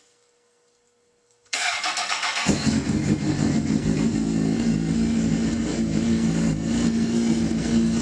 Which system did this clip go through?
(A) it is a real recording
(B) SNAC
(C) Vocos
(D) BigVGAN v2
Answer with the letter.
B